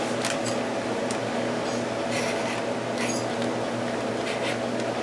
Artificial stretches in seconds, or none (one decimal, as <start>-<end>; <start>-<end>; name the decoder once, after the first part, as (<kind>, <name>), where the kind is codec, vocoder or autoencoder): none